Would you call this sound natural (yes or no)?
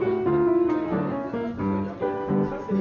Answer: yes